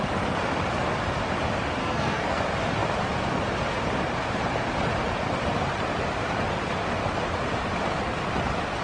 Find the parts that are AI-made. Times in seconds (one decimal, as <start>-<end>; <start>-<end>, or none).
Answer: 1.8-2.4